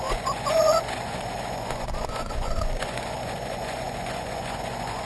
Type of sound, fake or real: fake